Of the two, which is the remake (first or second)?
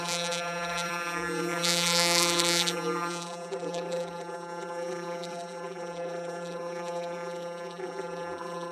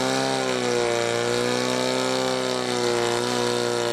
first